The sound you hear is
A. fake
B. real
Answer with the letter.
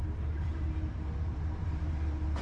A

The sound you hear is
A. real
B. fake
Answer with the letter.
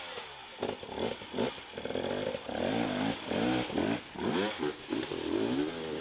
A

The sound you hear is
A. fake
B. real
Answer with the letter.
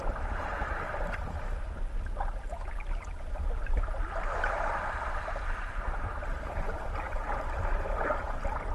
A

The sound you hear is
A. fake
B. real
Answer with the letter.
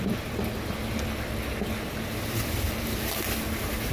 B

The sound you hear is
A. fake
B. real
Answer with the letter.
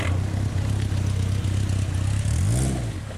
B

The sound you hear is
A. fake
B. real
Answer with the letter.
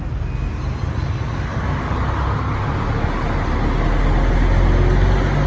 B